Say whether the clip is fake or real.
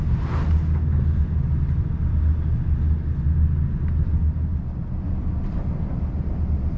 real